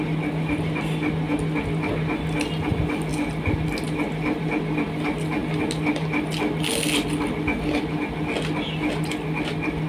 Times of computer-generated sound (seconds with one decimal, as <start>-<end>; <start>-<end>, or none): none